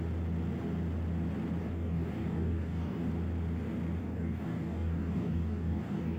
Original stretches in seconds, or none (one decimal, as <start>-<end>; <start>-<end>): 0.0-1.6; 3.1-4.0